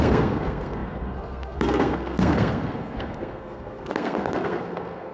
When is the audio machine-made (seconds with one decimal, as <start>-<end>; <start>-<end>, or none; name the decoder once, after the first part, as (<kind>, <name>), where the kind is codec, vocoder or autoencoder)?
0.0-5.1 (codec, SNAC)